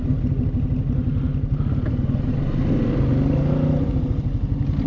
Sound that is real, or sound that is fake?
real